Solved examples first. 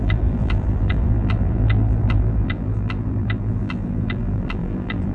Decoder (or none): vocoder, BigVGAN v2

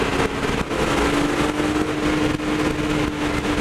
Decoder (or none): none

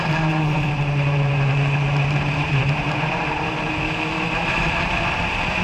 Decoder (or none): vocoder, BigVGAN v2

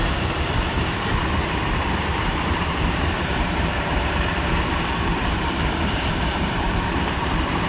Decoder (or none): vocoder, BigVGAN v2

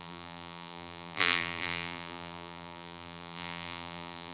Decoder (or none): vocoder, BigVGAN v2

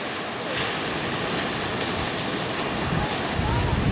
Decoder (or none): none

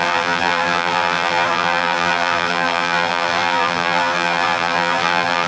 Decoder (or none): vocoder, BigVGAN v2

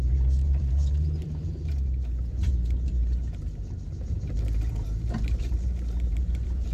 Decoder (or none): vocoder, BigVGAN v2